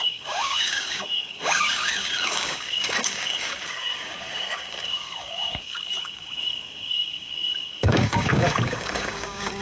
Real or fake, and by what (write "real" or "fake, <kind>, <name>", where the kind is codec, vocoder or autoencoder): fake, codec, DAC